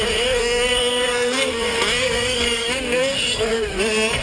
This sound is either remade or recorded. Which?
remade